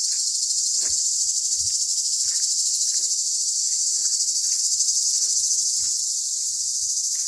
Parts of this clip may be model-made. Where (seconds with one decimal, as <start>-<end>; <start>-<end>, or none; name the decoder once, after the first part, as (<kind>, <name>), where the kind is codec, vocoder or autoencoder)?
4.0-4.6 (vocoder, Vocos)